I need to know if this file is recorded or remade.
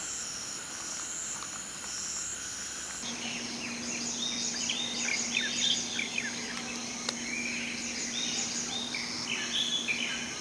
recorded